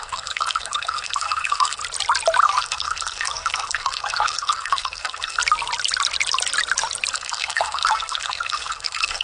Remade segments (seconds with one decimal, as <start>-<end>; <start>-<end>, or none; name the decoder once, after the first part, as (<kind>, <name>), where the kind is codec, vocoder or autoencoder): 0.0-1.8 (codec, SNAC); 2.4-5.4; 7.1-9.2